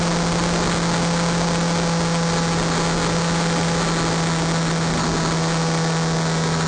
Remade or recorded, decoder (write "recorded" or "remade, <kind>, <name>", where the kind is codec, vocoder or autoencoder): recorded